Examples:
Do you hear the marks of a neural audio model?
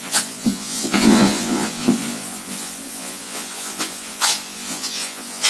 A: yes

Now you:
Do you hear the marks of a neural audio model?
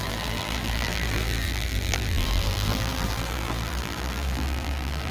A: yes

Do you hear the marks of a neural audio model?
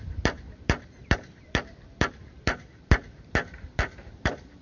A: yes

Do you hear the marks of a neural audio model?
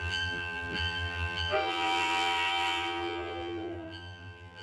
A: yes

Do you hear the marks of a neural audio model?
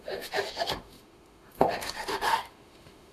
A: yes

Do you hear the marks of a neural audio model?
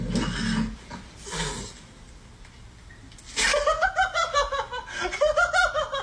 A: no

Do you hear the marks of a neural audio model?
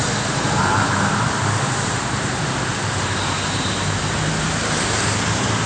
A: yes